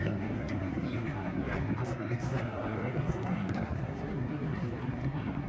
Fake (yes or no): yes